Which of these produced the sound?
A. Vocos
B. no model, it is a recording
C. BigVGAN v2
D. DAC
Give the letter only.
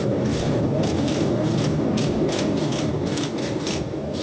D